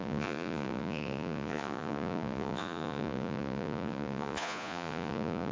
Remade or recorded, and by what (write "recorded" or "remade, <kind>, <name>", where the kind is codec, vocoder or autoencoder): remade, vocoder, Vocos